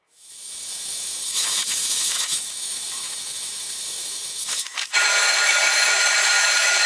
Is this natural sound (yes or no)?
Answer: no